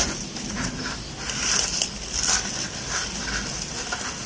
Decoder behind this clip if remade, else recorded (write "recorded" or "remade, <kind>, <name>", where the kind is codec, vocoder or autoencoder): recorded